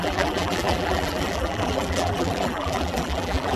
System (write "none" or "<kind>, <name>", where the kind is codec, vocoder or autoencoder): vocoder, BigVGAN v2